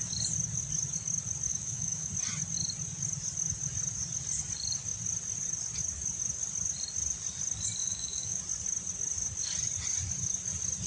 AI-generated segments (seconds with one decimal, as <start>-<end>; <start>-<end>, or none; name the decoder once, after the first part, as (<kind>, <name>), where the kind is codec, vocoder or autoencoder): 1.5-2.1 (autoencoder, DAC-VAE); 7.8-8.4